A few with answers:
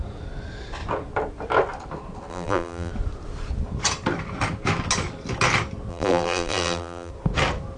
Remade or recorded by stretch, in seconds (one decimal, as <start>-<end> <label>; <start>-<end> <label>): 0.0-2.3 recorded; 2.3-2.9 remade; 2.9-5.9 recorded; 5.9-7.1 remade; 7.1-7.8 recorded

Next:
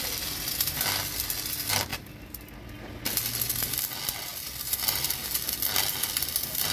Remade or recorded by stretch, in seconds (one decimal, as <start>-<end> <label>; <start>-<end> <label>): 0.0-4.3 recorded; 4.3-5.1 remade; 5.1-6.7 recorded

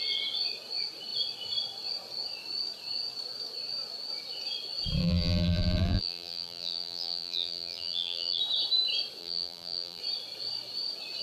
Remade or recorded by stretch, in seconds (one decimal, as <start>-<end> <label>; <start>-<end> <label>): 0.0-5.0 recorded; 5.0-8.4 remade; 8.4-9.2 recorded; 9.2-10.0 remade; 10.0-11.2 recorded

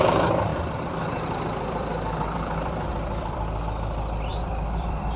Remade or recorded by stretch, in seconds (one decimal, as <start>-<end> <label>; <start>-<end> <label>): 0.0-0.5 recorded; 0.5-3.6 remade; 3.6-4.3 recorded; 4.3-5.2 remade

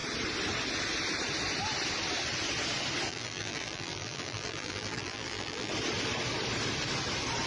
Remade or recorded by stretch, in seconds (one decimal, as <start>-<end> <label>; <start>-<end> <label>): 0.0-3.1 recorded; 3.1-5.7 remade; 5.7-7.5 recorded

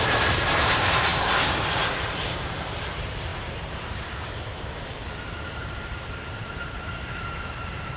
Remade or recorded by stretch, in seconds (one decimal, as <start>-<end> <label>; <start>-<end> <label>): 0.0-8.0 remade